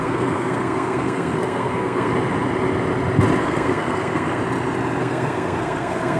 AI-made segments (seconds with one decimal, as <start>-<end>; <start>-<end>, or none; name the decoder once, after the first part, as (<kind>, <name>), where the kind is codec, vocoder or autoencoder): 0.0-2.1 (codec, SNAC); 3.4-4.4; 5.0-6.2